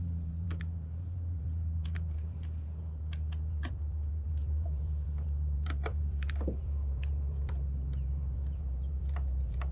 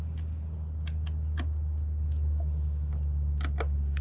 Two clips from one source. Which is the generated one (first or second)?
first